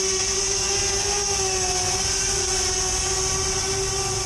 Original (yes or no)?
yes